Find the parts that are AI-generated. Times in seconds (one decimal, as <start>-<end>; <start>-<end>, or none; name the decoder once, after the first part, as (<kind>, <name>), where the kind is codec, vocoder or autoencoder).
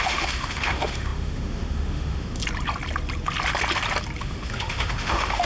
0.0-2.4 (autoencoder, DAC-VAE); 4.2-5.5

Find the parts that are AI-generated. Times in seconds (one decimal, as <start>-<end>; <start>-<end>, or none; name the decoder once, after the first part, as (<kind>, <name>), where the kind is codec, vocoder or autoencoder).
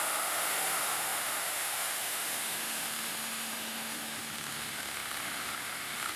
0.0-6.2 (autoencoder, DAC-VAE)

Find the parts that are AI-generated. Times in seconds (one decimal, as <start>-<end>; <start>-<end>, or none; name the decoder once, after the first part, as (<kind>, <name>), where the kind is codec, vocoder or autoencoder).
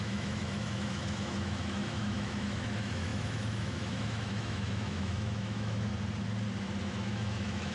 0.0-5.9 (autoencoder, DAC-VAE); 6.8-7.7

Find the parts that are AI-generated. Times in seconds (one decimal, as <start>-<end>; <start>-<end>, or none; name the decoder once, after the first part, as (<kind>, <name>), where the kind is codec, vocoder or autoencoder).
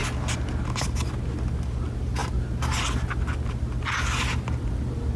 none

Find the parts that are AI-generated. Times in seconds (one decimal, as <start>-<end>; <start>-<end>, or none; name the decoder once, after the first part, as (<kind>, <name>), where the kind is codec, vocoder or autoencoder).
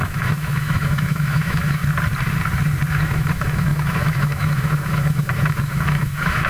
0.0-1.8 (autoencoder, DAC-VAE); 2.9-6.5